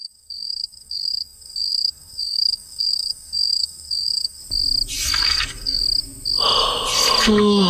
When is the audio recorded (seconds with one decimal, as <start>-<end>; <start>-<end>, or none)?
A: 4.4-5.2; 5.8-7.2